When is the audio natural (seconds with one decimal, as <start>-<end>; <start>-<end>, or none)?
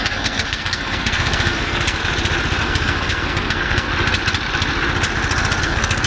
2.0-2.6; 3.9-5.6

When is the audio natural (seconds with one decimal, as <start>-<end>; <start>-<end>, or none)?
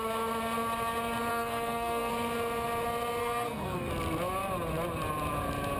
0.0-1.3; 2.1-3.2; 3.9-5.8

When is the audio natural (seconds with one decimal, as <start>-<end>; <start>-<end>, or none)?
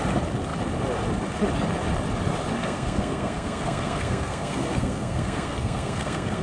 0.0-2.6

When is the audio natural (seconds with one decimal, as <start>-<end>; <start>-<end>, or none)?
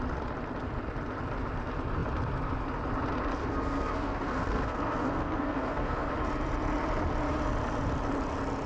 0.0-3.4; 6.1-8.7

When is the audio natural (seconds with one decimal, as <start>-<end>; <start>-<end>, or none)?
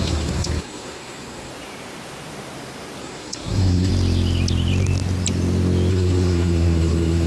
1.5-3.0; 3.9-5.9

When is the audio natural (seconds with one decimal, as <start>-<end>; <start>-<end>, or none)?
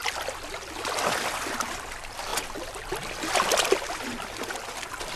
0.0-5.2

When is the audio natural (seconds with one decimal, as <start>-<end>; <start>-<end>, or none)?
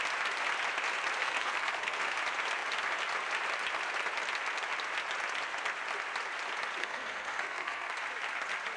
0.0-1.2; 2.1-6.8; 7.9-8.8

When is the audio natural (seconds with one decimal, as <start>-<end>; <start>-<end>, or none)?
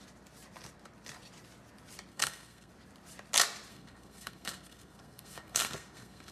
0.0-2.1; 2.7-3.7